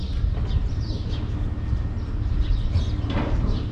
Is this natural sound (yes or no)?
yes